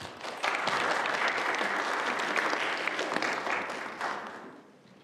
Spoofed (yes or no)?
no